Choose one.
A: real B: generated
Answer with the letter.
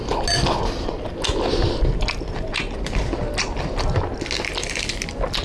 A